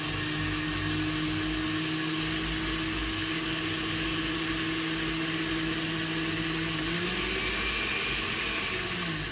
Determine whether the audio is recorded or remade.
recorded